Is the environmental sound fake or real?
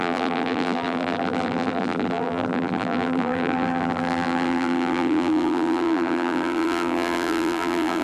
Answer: fake